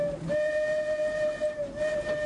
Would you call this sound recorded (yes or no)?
yes